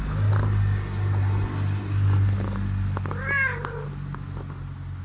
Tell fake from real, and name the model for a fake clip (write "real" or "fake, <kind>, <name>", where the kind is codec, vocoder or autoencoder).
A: real